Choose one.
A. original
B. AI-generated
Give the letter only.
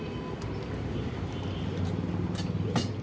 A